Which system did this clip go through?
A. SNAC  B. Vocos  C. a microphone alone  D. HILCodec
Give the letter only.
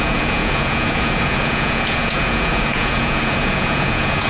B